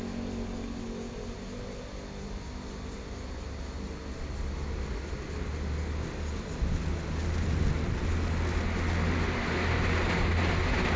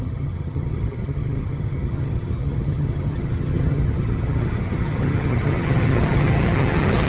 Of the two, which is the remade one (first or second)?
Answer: second